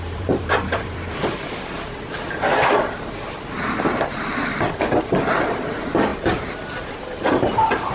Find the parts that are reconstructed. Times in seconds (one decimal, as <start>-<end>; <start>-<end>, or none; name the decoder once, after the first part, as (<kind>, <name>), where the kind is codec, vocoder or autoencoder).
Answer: 0.0-6.1 (vocoder, BigVGAN v2); 7.3-7.9